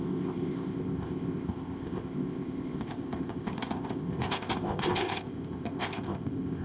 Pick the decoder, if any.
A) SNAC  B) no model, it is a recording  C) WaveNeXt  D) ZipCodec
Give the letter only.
D